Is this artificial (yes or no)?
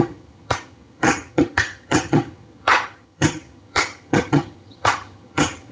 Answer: yes